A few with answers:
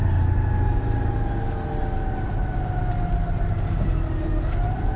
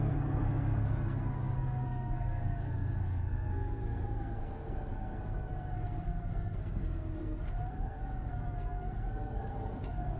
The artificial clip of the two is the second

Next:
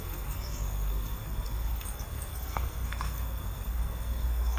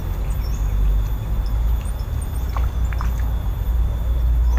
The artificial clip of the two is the first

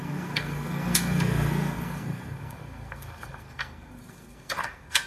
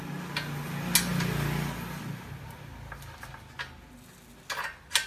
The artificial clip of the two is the first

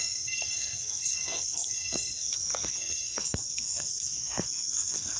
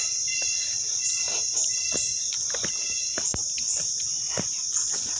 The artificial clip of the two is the first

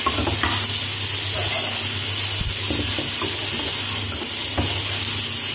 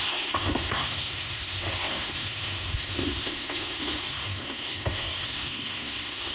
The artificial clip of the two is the second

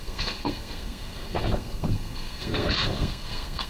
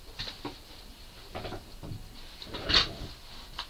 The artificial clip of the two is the first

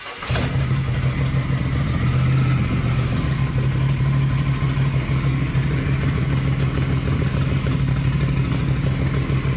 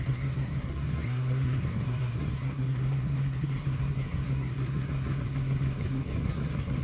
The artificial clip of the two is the second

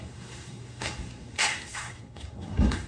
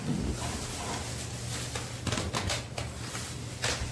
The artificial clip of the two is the first